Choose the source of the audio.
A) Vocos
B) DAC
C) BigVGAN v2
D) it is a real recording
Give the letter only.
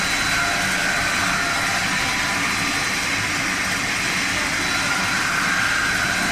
D